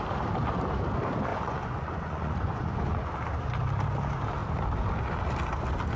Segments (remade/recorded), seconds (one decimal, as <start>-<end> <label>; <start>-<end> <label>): 0.0-1.3 recorded; 1.3-3.1 remade; 3.1-6.0 recorded